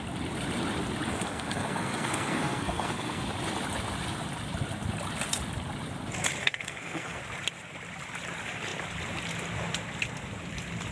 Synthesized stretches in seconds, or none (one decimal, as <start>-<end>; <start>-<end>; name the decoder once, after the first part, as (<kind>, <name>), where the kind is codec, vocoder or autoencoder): 1.1-3.2 (codec, SNAC); 6.4-7.2